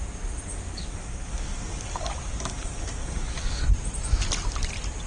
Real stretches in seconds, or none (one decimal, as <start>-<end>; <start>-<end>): 0.0-0.5; 3.6-5.1